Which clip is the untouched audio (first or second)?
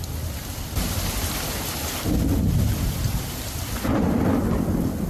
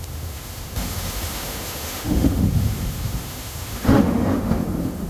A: first